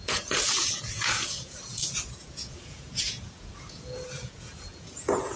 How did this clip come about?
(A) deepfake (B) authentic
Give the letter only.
A